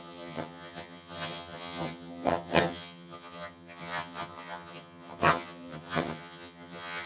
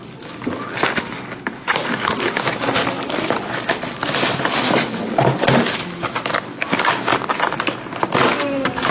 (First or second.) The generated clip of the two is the first